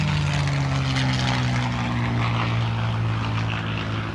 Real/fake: real